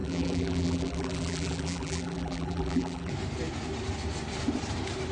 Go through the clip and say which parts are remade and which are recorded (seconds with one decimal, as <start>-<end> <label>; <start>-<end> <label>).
0.0-3.1 remade; 3.1-5.1 recorded